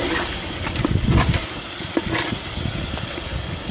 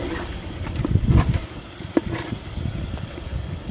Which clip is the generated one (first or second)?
second